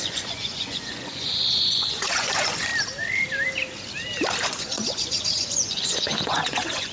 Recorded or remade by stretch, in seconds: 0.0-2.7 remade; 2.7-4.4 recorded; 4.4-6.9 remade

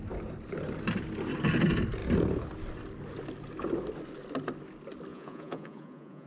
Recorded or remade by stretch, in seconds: 0.0-5.1 recorded; 5.1-6.3 remade

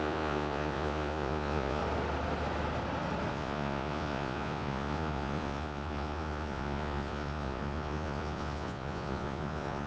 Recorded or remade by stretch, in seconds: 0.0-1.8 remade; 1.8-3.3 recorded; 3.3-9.9 remade